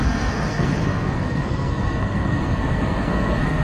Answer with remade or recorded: remade